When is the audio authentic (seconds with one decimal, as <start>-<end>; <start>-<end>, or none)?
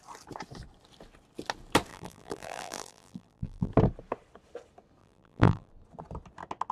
0.0-1.9; 3.7-5.0; 5.7-6.7